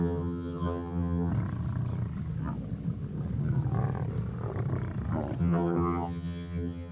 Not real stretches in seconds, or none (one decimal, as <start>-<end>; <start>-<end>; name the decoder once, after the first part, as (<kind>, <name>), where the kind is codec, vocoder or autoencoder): 0.0-1.3 (vocoder, HiFi-GAN); 5.4-6.9

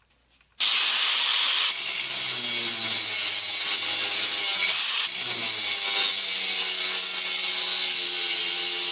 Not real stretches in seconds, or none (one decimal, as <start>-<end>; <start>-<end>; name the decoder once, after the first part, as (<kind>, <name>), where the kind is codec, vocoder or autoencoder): 7.4-8.4 (vocoder, BigVGAN v2)

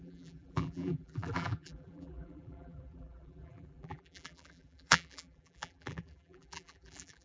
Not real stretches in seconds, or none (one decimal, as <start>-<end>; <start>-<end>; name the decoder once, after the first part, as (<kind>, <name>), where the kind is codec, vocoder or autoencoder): 0.0-7.2 (vocoder, BigVGAN v2)

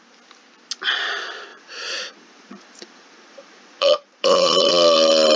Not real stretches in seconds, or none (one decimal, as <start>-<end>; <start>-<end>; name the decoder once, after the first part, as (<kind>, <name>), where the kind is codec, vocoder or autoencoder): 1.5-4.7 (vocoder, Vocos)

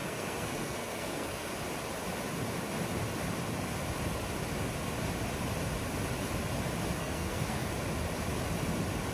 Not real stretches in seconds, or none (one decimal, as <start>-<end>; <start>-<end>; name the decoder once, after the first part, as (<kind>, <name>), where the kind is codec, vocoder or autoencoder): 0.0-1.5 (codec, SNAC); 7.0-7.7

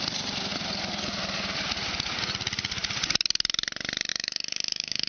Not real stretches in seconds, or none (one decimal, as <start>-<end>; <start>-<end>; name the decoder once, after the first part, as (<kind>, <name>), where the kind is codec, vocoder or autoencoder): 4.1-5.1 (autoencoder, DAC-VAE)

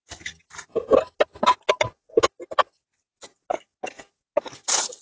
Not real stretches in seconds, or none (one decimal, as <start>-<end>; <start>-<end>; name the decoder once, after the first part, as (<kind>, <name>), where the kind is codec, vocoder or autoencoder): none

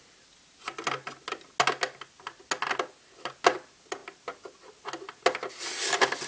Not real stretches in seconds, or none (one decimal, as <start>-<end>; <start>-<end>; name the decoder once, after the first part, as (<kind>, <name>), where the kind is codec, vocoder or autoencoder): none